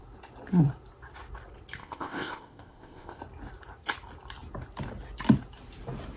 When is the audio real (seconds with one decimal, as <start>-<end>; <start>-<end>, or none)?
0.0-1.8; 3.2-6.2